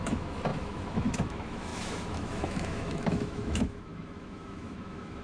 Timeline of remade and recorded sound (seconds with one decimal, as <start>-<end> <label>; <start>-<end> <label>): 0.0-5.2 remade

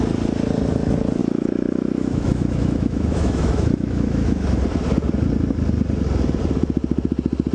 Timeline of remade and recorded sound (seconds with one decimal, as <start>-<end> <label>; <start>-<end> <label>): 0.0-1.2 recorded; 1.2-4.6 remade; 4.6-7.5 recorded

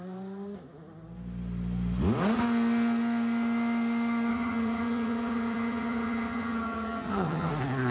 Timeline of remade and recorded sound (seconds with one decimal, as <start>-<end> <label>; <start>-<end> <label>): 0.0-4.3 recorded; 4.3-7.5 remade; 7.5-7.9 recorded

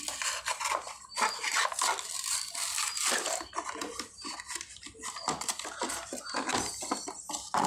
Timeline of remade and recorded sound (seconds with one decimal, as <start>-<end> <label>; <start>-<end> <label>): 0.0-7.7 remade

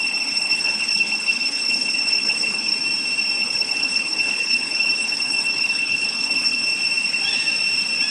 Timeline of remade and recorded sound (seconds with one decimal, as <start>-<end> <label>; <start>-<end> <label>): 0.0-2.7 remade; 2.7-3.4 recorded; 3.4-6.7 remade; 6.7-8.1 recorded

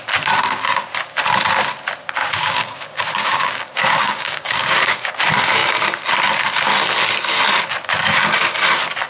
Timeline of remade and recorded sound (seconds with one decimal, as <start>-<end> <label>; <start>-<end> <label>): 0.0-2.2 recorded; 2.2-5.1 remade; 5.1-9.1 recorded

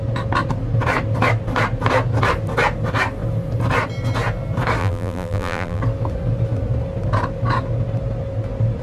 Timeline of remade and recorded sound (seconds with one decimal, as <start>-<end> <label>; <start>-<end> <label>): 0.0-4.8 recorded; 4.8-5.8 remade; 5.8-8.8 recorded